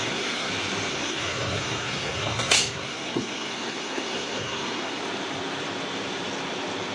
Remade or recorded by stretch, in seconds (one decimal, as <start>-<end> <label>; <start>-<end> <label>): 0.0-0.5 remade; 0.5-0.9 recorded; 0.9-5.0 remade; 5.0-6.9 recorded